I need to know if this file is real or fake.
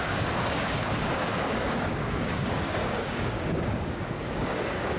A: fake